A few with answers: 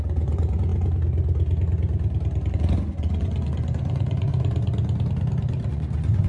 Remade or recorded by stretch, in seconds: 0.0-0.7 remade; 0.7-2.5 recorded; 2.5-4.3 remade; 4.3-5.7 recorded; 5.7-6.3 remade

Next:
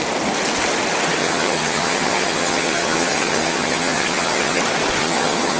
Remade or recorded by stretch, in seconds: 0.0-1.2 recorded; 1.2-4.6 remade; 4.6-5.0 recorded; 5.0-5.6 remade